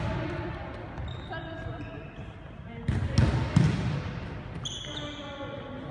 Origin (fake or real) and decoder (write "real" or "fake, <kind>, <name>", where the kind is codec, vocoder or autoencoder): real